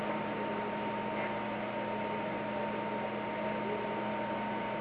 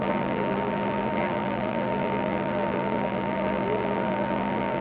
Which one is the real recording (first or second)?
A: first